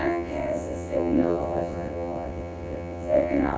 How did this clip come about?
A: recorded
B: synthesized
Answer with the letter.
B